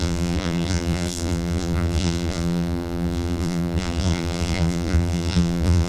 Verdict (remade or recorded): remade